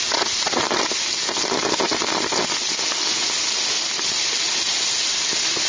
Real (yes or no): yes